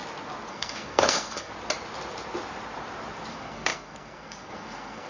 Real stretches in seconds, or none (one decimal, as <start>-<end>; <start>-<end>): 0.0-0.5; 1.5-3.3